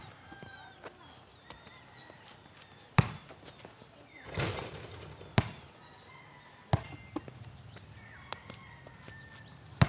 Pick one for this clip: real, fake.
real